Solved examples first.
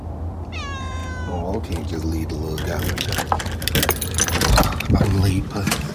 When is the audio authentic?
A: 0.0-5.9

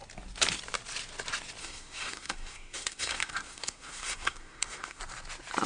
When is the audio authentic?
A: 0.0-1.6; 5.0-5.7